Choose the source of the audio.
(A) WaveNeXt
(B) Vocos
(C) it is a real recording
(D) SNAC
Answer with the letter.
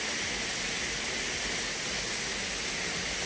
C